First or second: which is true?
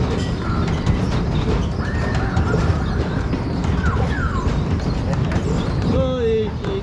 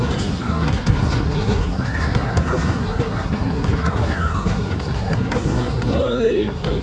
first